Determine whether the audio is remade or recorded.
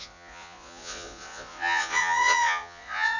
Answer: remade